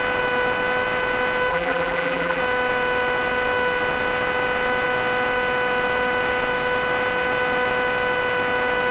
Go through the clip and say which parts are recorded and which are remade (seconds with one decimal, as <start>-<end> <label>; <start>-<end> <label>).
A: 0.0-1.5 recorded; 1.5-2.4 remade; 2.4-8.9 recorded